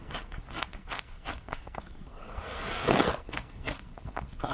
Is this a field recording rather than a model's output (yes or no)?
no